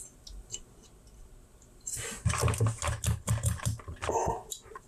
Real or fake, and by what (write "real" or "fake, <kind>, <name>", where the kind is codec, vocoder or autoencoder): real